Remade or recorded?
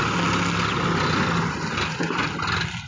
recorded